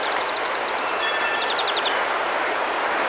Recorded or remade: remade